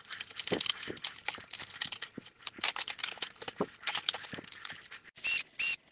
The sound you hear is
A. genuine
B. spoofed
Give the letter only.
A